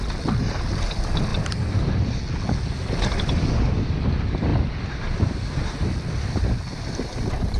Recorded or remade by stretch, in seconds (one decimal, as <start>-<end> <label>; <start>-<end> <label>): 0.0-1.3 recorded; 1.3-2.2 remade; 2.2-4.5 recorded; 4.5-7.6 remade